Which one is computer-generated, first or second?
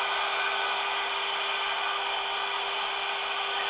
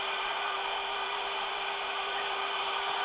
second